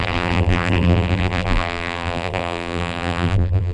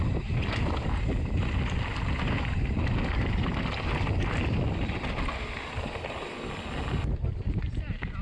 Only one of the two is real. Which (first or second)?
second